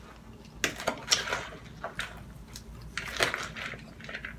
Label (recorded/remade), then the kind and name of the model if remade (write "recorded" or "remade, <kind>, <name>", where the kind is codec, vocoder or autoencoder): recorded